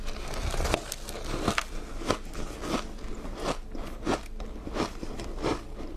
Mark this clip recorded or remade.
recorded